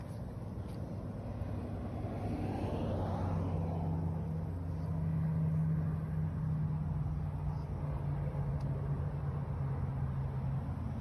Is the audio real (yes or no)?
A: yes